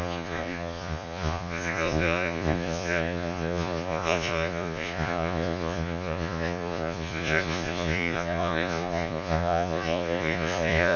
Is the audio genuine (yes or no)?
no